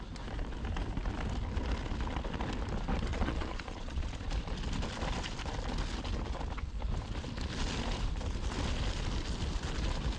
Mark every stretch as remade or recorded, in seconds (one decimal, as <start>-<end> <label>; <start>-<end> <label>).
0.0-3.1 recorded; 3.1-4.1 remade; 4.1-10.2 recorded